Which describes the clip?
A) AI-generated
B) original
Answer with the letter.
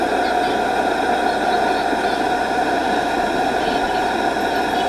B